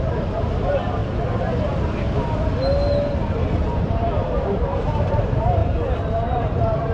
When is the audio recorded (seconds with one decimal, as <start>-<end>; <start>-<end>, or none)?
1.0-3.2; 5.6-6.1